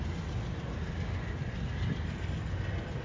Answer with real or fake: real